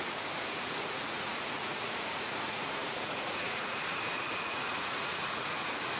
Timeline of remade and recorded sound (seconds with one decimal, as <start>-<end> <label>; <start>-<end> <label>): 0.0-6.0 remade